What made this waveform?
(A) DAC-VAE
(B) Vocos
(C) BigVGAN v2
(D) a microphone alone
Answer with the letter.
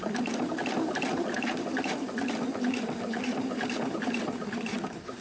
D